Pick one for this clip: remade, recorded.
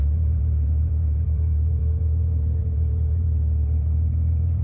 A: remade